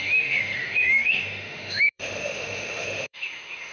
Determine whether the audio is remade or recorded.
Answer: remade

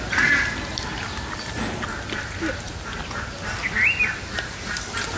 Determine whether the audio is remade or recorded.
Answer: recorded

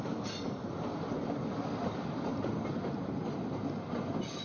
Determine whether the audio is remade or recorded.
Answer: recorded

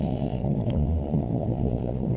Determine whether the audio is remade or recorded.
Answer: remade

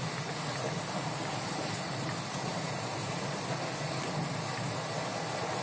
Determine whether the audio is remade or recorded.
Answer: recorded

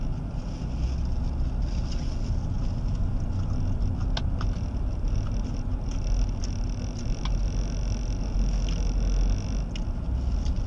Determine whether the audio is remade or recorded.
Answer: recorded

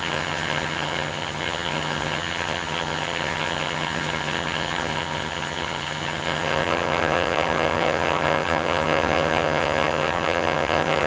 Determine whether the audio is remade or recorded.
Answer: remade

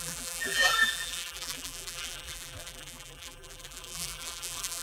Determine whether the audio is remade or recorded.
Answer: remade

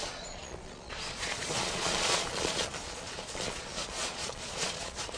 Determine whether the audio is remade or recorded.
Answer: remade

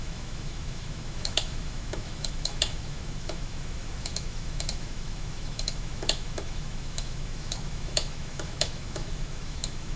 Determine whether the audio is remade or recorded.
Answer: remade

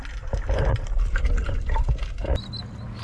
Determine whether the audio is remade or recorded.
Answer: recorded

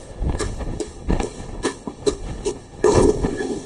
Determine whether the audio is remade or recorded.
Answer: remade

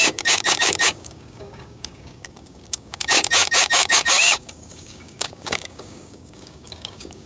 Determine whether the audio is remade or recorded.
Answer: remade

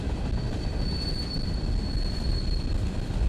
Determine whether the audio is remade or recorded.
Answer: remade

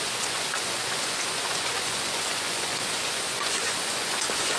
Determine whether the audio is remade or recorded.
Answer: remade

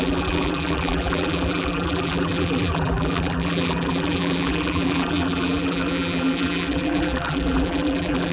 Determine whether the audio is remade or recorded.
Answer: remade